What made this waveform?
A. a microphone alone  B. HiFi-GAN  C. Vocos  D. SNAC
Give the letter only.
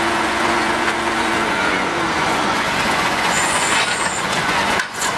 C